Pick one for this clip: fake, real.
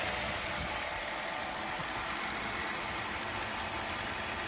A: real